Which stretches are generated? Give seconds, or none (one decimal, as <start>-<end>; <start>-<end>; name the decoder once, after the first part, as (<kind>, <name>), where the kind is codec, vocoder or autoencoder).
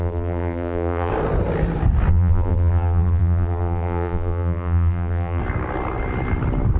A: 0.0-1.1 (vocoder, BigVGAN v2); 2.1-5.4